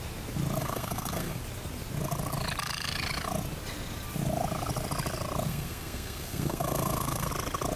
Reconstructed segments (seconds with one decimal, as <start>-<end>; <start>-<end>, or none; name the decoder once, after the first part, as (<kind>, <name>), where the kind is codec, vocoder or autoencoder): 0.6-1.4 (codec, SNAC); 5.5-7.3